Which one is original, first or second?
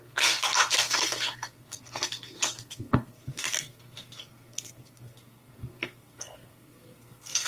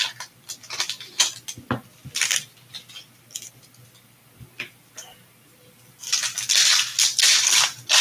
second